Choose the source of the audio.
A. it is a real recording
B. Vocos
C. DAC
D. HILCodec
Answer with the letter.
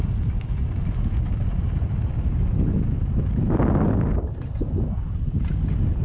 A